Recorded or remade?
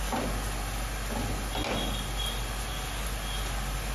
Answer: recorded